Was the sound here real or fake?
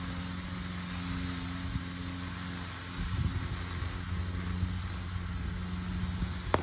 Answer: real